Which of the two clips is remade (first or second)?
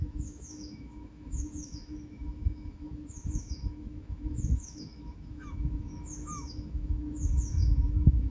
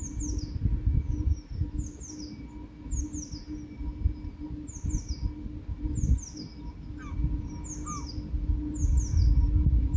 first